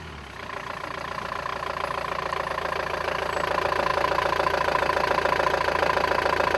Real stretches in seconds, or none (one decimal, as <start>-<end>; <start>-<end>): 0.0-6.6